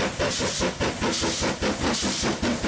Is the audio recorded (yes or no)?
yes